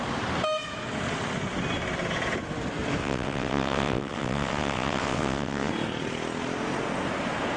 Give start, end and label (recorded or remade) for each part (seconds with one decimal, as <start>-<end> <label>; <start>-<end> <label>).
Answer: 0.0-3.0 recorded; 3.0-5.7 remade; 5.7-7.6 recorded